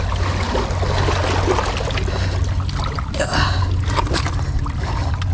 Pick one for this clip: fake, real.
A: real